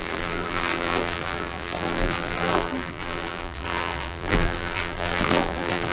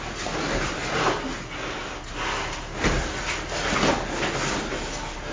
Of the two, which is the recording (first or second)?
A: second